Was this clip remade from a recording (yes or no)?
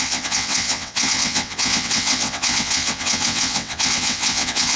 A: yes